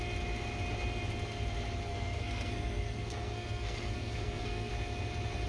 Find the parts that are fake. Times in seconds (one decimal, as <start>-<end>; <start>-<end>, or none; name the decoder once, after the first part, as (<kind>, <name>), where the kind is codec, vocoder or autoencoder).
1.9-4.7 (codec, SNAC)